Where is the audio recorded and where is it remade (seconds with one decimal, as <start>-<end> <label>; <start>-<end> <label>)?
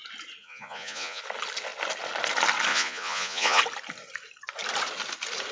0.0-0.4 recorded; 0.4-1.2 remade; 1.2-2.7 recorded; 2.7-3.6 remade; 3.6-5.5 recorded